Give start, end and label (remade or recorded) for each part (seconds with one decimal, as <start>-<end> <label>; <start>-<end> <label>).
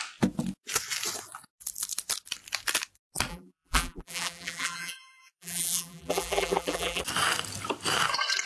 0.0-3.3 recorded; 3.3-7.0 remade; 7.0-8.5 recorded